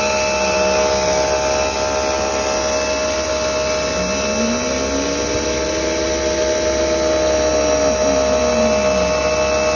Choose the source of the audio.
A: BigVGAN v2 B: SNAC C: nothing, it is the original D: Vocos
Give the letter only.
C